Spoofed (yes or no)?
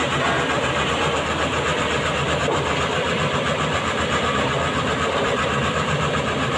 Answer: yes